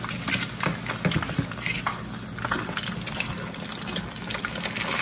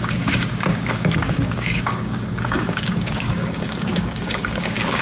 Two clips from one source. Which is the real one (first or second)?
first